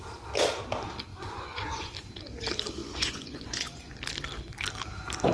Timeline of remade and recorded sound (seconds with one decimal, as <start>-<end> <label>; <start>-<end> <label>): 0.0-1.1 recorded; 1.1-1.9 remade; 1.9-2.8 recorded; 2.8-4.0 remade; 4.0-5.3 recorded

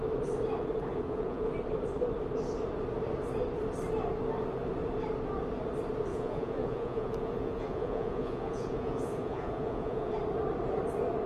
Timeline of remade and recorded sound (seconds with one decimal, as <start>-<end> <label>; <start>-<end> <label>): 0.0-0.9 recorded; 0.9-1.5 remade; 1.5-6.1 recorded; 6.1-10.1 remade; 10.1-11.3 recorded